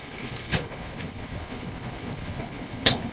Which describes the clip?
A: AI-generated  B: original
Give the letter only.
A